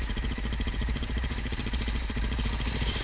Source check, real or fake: fake